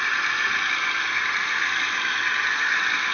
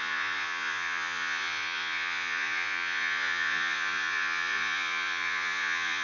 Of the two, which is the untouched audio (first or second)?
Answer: first